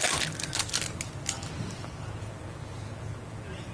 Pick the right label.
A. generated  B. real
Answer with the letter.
B